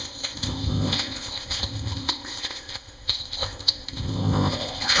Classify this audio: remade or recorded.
remade